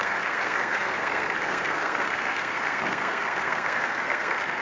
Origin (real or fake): fake